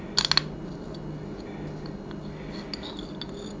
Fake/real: real